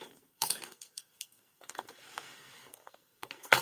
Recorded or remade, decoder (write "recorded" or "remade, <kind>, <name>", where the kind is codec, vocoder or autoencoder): remade, codec, SNAC